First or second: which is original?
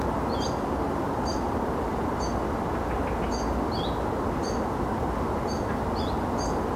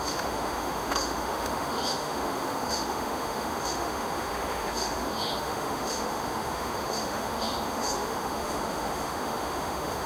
first